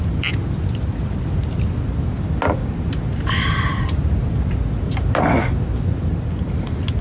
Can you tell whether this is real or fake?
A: real